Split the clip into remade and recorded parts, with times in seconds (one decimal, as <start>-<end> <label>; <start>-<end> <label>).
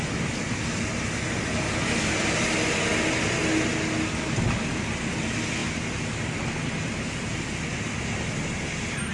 0.0-9.1 recorded